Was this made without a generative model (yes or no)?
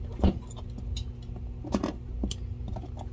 yes